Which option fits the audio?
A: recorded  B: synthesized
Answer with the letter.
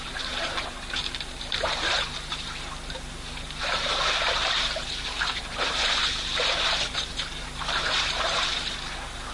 B